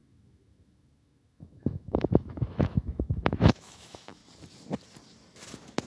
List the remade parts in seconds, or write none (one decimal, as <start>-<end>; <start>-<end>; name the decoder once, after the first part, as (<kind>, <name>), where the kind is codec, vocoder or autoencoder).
0.0-4.2 (autoencoder, DAC-VAE)